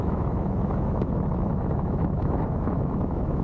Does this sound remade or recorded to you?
remade